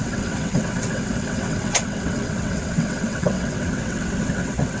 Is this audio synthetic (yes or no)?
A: yes